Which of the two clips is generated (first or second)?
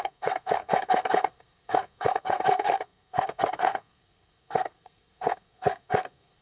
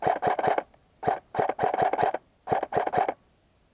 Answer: first